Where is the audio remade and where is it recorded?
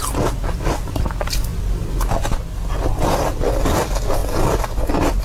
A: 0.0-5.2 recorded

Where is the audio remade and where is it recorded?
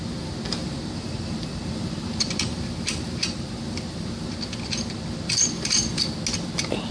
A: 0.0-0.6 recorded; 0.6-4.4 remade; 4.4-5.4 recorded; 5.4-6.0 remade; 6.0-6.9 recorded